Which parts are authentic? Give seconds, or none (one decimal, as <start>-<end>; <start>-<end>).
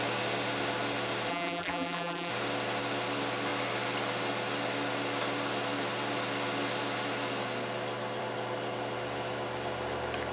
0.0-1.3; 2.3-10.3